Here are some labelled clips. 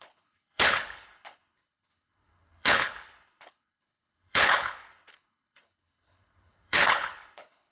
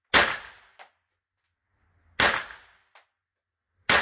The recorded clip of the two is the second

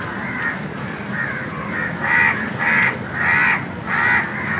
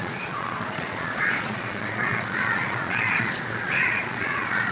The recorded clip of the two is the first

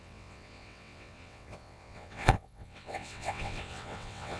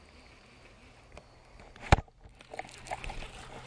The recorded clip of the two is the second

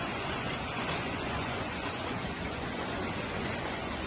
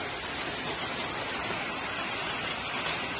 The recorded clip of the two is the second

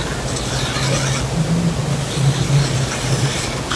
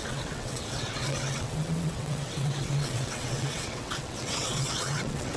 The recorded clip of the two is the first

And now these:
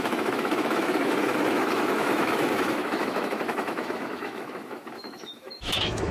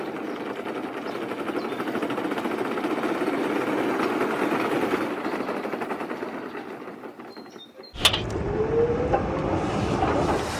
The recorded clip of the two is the second